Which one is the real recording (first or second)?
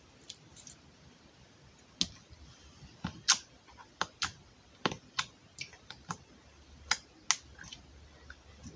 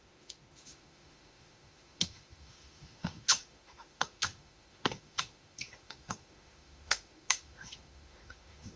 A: first